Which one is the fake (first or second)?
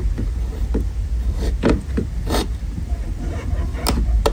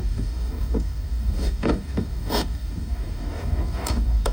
second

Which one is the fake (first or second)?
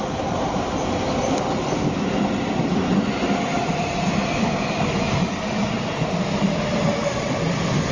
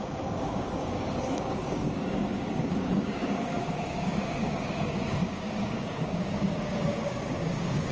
second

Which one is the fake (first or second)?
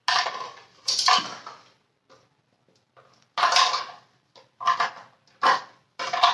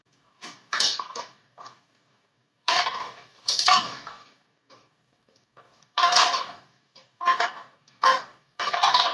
second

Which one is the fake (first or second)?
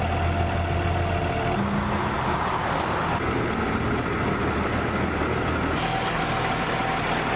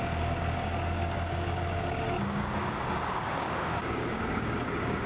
second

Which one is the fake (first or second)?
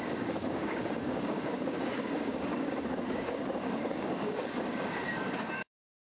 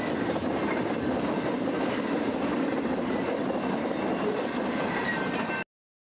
first